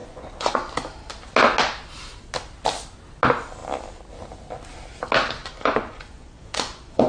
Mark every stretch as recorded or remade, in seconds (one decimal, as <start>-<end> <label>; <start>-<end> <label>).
0.0-0.7 remade; 0.7-5.4 recorded; 5.4-7.1 remade